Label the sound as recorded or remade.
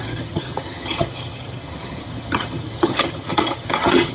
remade